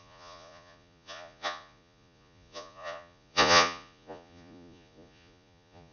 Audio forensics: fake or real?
fake